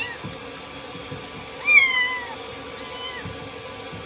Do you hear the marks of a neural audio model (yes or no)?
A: no